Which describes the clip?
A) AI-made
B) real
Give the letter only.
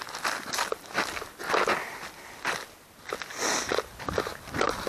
B